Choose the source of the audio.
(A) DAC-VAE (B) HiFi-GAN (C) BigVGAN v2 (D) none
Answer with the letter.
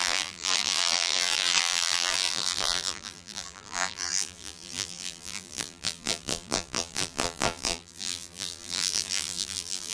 C